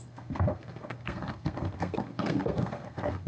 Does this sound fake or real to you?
fake